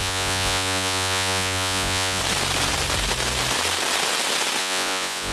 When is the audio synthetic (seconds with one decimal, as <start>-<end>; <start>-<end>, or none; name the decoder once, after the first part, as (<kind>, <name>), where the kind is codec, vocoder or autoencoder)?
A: 0.0-2.2 (vocoder, Vocos); 4.6-5.3